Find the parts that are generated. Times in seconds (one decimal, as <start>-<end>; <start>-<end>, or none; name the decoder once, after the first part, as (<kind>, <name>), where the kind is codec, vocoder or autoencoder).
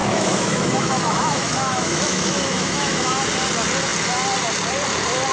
0.0-3.2 (autoencoder, DAC-VAE)